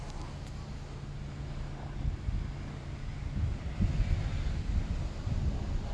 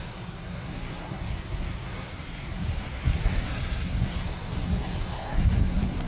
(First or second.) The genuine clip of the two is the first